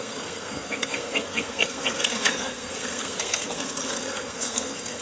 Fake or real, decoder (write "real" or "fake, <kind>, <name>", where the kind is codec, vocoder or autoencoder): fake, codec, SNAC